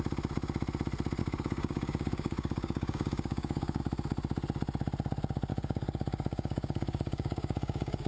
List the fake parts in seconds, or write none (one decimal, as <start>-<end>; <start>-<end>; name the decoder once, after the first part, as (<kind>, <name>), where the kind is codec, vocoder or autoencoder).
1.2-3.8 (codec, DAC); 5.5-8.1